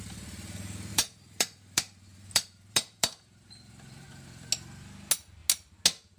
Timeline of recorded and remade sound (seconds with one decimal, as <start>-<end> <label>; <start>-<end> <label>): 0.0-0.9 recorded; 0.9-4.5 remade; 4.5-6.2 recorded